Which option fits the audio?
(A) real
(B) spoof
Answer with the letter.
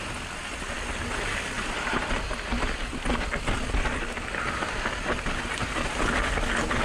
A